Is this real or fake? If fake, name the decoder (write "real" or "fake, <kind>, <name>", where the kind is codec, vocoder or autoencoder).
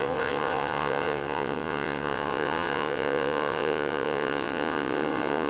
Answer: fake, vocoder, WaveNeXt